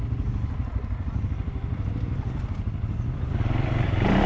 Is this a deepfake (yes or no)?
yes